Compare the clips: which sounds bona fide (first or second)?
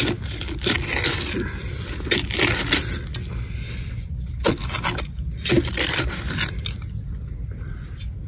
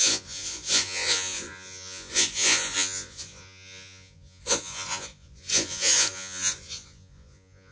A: first